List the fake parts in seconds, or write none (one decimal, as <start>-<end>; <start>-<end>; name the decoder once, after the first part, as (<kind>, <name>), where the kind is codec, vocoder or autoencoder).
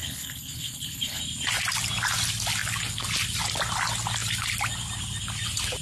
0.0-1.2 (codec, HILCodec)